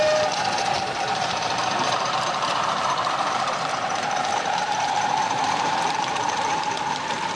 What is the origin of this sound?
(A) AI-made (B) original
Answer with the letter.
A